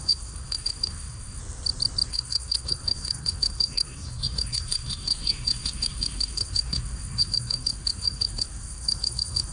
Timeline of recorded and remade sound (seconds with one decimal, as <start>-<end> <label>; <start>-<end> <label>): 0.0-1.4 remade; 1.4-2.1 recorded; 2.1-9.5 remade